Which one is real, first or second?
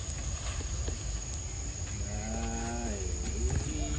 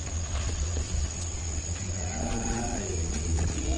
first